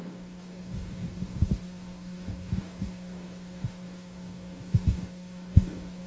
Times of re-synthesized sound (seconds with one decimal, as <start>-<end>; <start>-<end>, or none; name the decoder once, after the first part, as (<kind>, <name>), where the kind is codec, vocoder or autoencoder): 0.0-6.1 (codec, DAC)